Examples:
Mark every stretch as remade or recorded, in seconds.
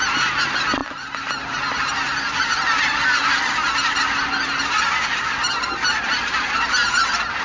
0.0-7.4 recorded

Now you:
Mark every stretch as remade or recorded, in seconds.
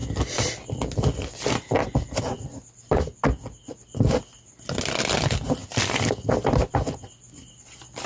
0.0-8.1 recorded